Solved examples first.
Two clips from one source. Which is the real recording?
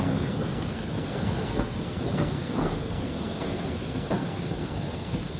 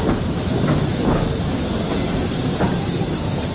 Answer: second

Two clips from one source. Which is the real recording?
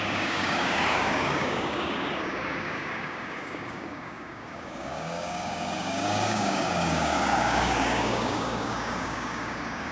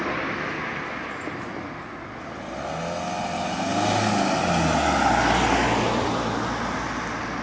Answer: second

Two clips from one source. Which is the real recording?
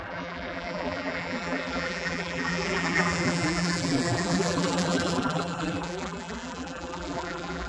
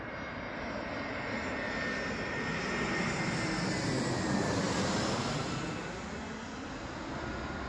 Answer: second